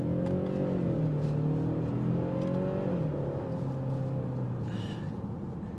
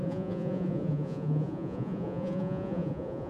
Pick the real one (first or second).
first